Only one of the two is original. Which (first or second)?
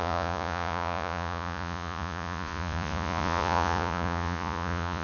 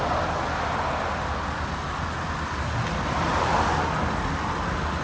second